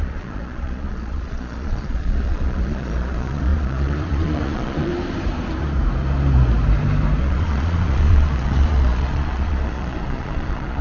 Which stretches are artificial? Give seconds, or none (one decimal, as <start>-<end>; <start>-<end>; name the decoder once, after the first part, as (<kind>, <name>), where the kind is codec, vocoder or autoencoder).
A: 0.0-4.9 (vocoder, Vocos); 7.2-10.8